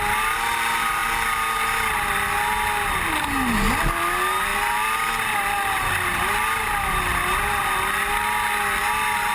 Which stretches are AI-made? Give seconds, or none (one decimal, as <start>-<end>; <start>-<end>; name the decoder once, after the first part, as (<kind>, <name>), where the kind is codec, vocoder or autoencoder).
none